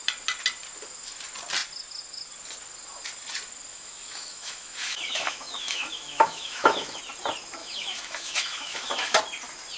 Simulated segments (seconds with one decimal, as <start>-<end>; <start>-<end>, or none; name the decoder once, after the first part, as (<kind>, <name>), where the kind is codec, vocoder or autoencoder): 3.7-7.0 (autoencoder, DAC-VAE); 7.6-9.2